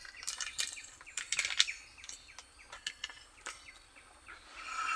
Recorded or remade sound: recorded